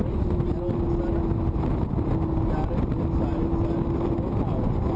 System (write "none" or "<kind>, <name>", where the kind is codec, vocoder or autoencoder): none